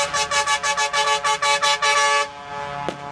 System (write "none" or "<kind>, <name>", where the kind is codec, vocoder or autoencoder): none